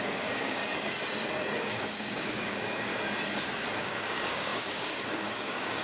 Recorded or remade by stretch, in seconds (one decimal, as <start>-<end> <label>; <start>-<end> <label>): 0.0-0.6 remade; 0.6-1.6 recorded; 1.6-2.9 remade; 2.9-3.8 recorded; 3.8-5.8 remade